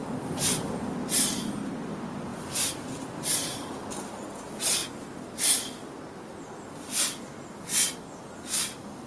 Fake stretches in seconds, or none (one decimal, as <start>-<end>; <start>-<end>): none